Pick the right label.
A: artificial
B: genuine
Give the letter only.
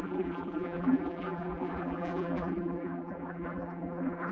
A